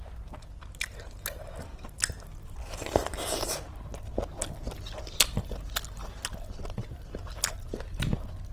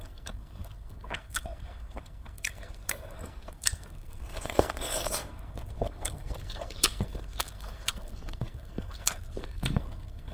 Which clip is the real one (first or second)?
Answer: first